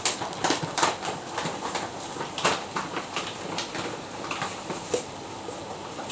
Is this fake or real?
fake